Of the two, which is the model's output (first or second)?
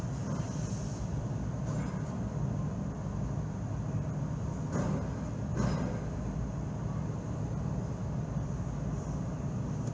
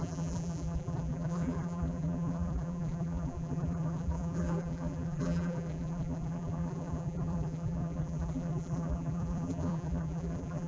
second